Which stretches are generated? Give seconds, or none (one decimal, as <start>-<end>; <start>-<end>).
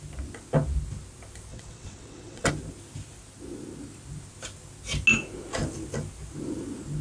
1.5-2.5